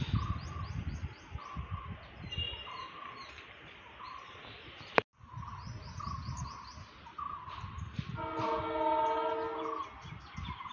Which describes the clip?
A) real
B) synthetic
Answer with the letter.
A